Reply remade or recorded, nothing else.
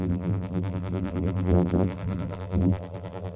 remade